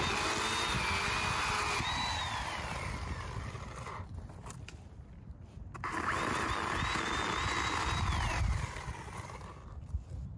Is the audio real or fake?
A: real